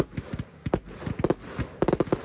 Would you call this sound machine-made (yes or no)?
no